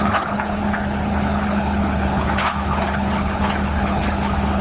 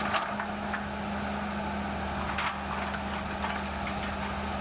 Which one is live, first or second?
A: second